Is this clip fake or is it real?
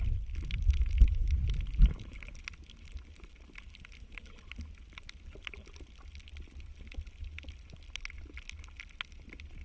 real